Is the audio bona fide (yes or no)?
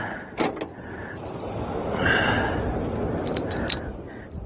yes